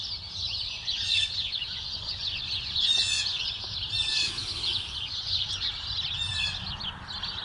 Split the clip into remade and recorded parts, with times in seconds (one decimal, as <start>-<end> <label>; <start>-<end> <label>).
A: 0.0-0.4 recorded; 0.4-3.6 remade; 3.6-4.7 recorded; 4.7-5.7 remade; 5.7-7.4 recorded